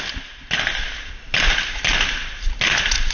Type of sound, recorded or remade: recorded